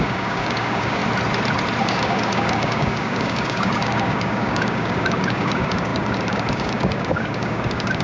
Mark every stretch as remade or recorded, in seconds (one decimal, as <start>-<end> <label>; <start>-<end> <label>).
0.0-1.0 remade; 1.0-1.8 recorded; 1.8-8.0 remade